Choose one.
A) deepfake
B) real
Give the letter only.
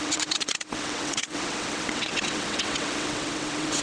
A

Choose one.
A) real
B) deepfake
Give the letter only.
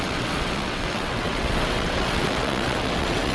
B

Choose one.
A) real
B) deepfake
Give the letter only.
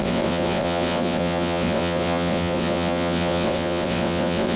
B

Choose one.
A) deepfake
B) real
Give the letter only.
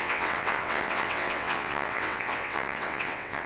A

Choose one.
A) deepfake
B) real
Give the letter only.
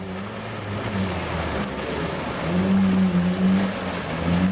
B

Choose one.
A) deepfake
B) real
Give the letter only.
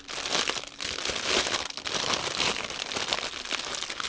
B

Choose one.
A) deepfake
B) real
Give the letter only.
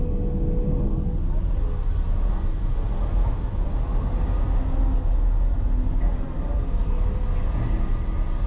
B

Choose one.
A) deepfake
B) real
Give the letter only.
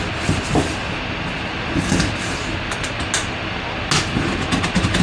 B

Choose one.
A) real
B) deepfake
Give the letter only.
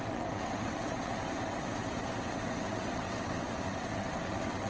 B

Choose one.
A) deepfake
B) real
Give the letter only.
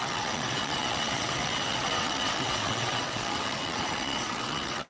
A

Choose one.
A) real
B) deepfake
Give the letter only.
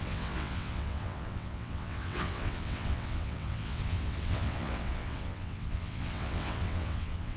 B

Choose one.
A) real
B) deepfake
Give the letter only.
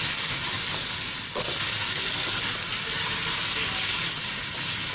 A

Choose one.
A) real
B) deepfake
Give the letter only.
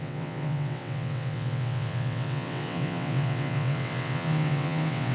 B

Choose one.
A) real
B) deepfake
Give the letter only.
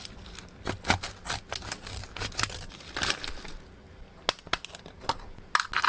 A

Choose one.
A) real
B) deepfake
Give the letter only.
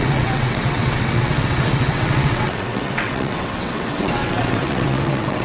B